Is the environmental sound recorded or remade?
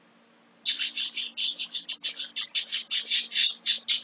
recorded